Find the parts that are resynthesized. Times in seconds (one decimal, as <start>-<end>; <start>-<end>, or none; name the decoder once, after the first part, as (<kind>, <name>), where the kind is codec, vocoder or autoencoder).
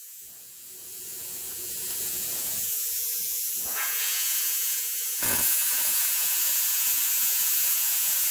0.0-8.3 (vocoder, Vocos)